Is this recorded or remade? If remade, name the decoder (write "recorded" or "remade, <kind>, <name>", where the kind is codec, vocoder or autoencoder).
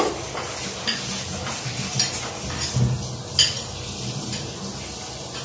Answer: recorded